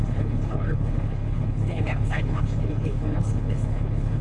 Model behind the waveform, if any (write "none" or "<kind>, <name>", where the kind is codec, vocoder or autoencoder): codec, HILCodec